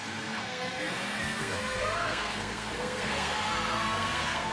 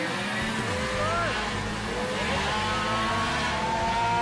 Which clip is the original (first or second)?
second